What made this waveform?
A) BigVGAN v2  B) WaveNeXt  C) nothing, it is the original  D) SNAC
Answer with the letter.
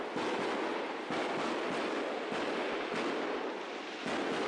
C